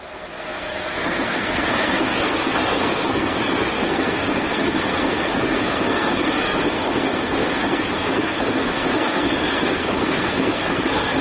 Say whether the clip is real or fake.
fake